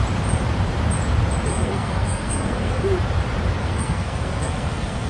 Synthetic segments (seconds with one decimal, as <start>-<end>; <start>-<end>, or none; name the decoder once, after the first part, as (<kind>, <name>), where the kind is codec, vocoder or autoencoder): 1.5-2.8 (codec, SNAC); 3.6-5.1